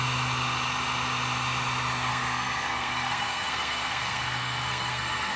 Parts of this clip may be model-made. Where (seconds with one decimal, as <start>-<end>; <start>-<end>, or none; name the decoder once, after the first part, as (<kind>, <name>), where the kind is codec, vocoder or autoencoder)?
2.1-5.4 (codec, SNAC)